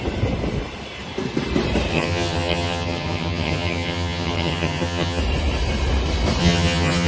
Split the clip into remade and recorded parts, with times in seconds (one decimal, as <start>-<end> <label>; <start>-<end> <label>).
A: 0.0-1.9 recorded; 1.9-5.2 remade; 5.2-6.4 recorded; 6.4-7.1 remade